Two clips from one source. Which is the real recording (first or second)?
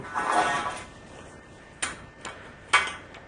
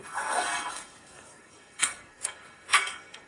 first